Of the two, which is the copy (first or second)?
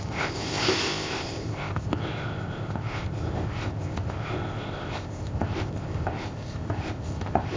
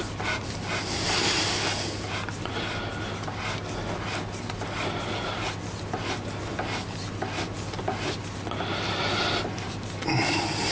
first